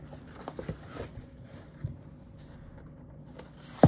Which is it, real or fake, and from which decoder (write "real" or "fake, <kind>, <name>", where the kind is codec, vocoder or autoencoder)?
real